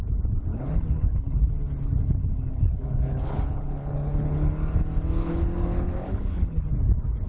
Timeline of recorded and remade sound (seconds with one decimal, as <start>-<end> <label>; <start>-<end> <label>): 0.0-0.5 recorded; 0.5-1.5 remade; 1.5-2.2 recorded; 2.2-4.5 remade; 4.5-5.2 recorded; 5.2-6.7 remade; 6.7-7.3 recorded

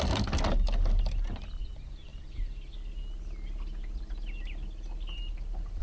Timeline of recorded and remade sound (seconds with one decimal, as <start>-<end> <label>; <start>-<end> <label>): 0.0-5.8 recorded

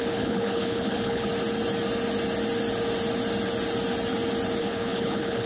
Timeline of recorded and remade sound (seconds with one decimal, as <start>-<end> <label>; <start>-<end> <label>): 0.0-1.3 remade; 1.3-4.6 recorded; 4.6-5.5 remade

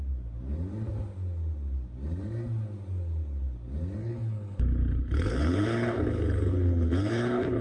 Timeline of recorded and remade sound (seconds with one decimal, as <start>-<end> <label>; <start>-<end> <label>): 0.0-4.0 recorded; 4.0-7.6 remade

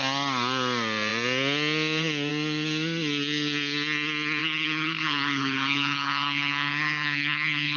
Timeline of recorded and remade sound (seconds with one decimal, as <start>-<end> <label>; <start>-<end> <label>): 0.0-4.4 recorded; 4.4-7.8 remade

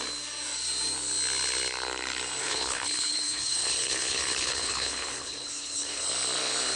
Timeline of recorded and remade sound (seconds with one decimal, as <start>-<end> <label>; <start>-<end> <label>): 0.0-2.4 recorded; 2.4-6.1 remade; 6.1-6.8 recorded

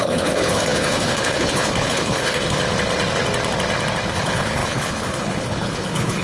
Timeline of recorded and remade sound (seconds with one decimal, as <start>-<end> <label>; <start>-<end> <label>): 0.0-2.6 remade; 2.6-4.1 recorded; 4.1-6.2 remade

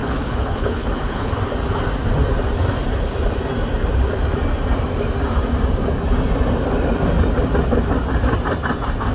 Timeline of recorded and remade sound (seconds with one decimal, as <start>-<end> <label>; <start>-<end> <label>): 0.0-1.3 remade; 1.3-9.1 recorded